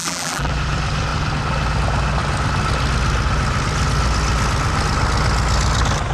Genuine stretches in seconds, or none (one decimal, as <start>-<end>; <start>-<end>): 0.5-6.1